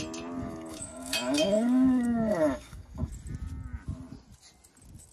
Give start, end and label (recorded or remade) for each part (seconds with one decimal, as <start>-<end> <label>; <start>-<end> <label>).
0.0-0.4 recorded; 0.4-3.1 remade; 3.1-5.1 recorded